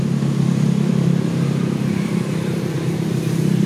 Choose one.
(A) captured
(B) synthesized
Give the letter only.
B